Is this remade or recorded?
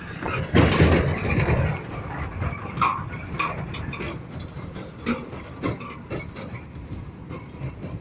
recorded